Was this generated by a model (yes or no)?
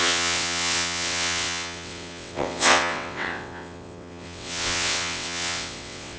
yes